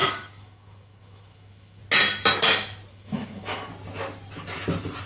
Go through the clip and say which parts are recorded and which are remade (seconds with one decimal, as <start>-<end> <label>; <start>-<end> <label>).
0.0-1.8 remade; 1.8-2.9 recorded; 2.9-3.7 remade; 3.7-5.1 recorded